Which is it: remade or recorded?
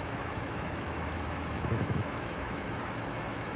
remade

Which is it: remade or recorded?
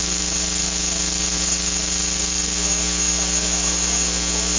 recorded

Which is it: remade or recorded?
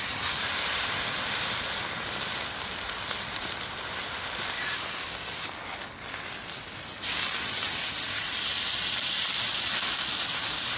remade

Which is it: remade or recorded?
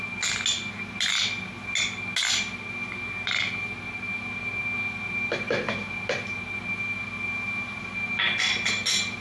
recorded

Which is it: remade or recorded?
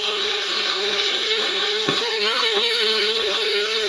remade